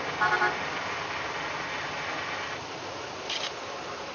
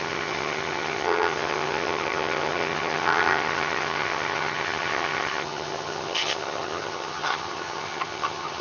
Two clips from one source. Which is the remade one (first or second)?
second